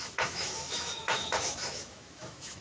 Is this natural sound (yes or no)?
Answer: no